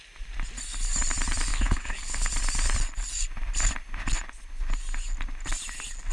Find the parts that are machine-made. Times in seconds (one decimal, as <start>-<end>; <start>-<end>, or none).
1.5-2.3